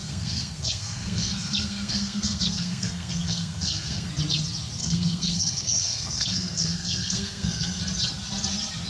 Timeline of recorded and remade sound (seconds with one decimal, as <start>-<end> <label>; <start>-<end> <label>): 0.0-4.1 remade; 4.1-4.8 recorded; 4.8-7.8 remade; 7.8-8.9 recorded